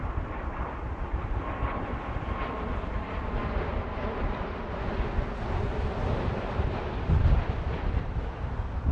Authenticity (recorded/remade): recorded